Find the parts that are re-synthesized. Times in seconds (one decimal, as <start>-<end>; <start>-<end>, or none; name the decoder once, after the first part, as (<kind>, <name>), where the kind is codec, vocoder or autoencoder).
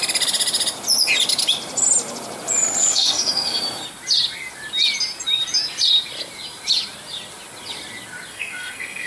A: 2.8-3.6 (codec, SNAC); 8.3-9.1